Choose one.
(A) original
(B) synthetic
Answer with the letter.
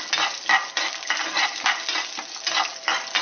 A